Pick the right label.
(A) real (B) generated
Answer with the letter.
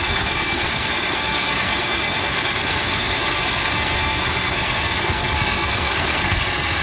B